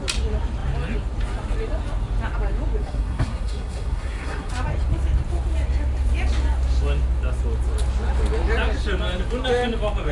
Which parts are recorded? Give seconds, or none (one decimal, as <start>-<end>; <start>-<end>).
0.0-2.8; 4.5-10.1